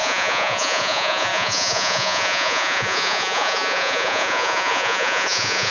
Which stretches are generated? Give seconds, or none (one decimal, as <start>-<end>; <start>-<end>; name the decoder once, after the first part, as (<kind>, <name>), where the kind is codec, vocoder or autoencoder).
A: 0.0-5.7 (vocoder, Vocos)